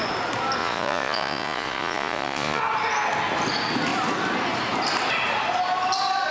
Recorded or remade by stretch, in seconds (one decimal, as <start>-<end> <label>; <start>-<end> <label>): 0.0-0.6 recorded; 0.6-2.6 remade; 2.6-6.3 recorded